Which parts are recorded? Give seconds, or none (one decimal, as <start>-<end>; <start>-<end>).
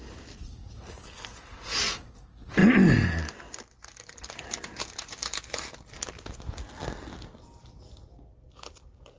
0.0-9.2